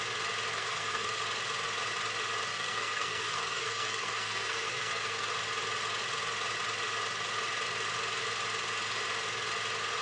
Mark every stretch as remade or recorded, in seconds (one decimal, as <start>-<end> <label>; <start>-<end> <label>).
0.0-0.5 recorded; 0.5-1.2 remade; 1.2-2.5 recorded; 2.5-5.3 remade; 5.3-10.0 recorded